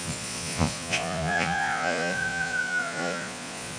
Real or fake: fake